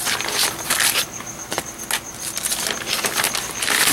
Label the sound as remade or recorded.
recorded